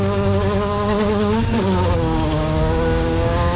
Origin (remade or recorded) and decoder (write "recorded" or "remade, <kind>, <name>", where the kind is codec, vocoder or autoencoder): remade, codec, DAC